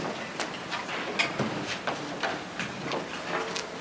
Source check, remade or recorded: recorded